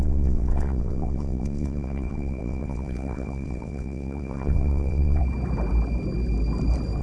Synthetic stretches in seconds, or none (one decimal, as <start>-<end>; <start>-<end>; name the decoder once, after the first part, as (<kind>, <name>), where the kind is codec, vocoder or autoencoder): 0.0-5.2 (vocoder, WaveNeXt)